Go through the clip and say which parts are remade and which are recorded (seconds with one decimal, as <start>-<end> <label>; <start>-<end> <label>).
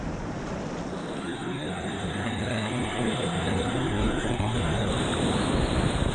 0.0-1.2 recorded; 1.2-4.9 remade; 4.9-6.1 recorded